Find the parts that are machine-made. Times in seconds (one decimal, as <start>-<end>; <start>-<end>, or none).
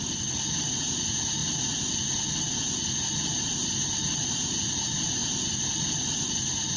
0.0-1.4; 3.0-5.2; 5.7-6.8